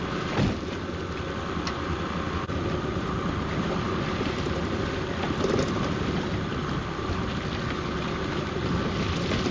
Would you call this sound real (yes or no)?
yes